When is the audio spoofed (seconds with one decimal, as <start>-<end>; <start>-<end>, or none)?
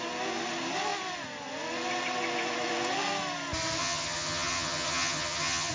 3.8-5.7